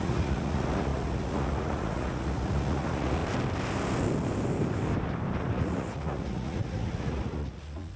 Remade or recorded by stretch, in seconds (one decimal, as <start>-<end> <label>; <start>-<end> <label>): 0.0-3.2 remade; 3.2-5.4 recorded; 5.4-8.0 remade